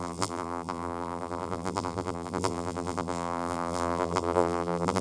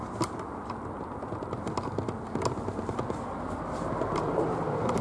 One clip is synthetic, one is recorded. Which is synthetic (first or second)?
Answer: first